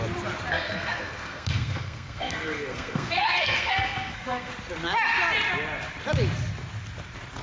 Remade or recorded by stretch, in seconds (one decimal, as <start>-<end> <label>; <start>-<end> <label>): 0.0-0.5 recorded; 0.5-4.5 remade; 4.5-7.4 recorded